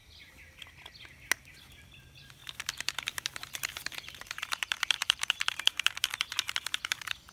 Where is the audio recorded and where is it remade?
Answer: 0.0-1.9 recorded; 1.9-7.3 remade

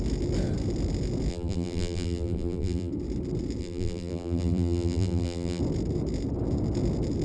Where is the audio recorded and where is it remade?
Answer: 0.0-1.3 recorded; 1.3-2.9 remade; 2.9-3.6 recorded; 3.6-5.6 remade; 5.6-7.2 recorded

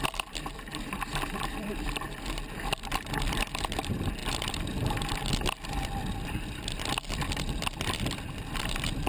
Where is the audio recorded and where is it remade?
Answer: 0.0-9.1 remade

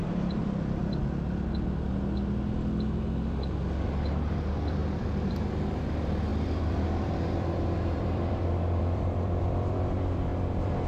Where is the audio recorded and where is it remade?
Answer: 0.0-0.8 remade; 0.8-4.3 recorded; 4.3-10.3 remade; 10.3-10.9 recorded

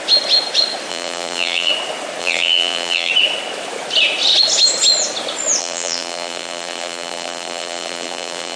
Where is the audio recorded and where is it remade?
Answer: 0.0-0.9 recorded; 0.9-1.7 remade; 1.7-2.2 recorded; 2.2-3.1 remade; 3.1-5.6 recorded; 5.6-8.6 remade

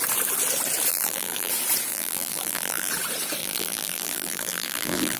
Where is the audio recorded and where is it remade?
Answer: 0.0-0.9 recorded; 0.9-1.5 remade; 1.5-1.9 recorded; 1.9-2.9 remade; 2.9-3.4 recorded; 3.4-5.2 remade

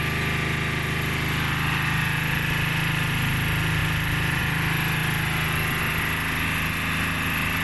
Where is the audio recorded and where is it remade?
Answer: 0.0-3.8 recorded; 3.8-4.4 remade; 4.4-7.6 recorded

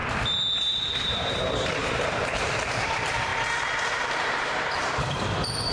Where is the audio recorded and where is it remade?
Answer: 0.0-0.9 recorded; 0.9-3.3 remade; 3.3-4.1 recorded; 4.1-5.7 remade